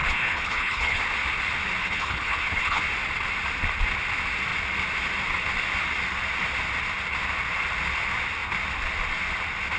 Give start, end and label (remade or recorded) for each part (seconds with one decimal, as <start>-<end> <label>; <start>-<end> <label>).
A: 0.0-1.0 remade; 1.0-1.8 recorded; 1.8-2.8 remade; 2.8-9.8 recorded